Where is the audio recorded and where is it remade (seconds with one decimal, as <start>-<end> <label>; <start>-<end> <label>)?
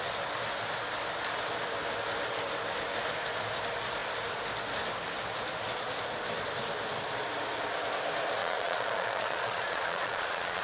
0.0-8.4 recorded; 8.4-10.6 remade